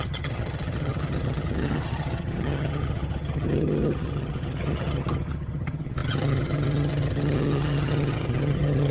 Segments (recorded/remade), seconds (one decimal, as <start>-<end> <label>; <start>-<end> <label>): 0.0-8.9 remade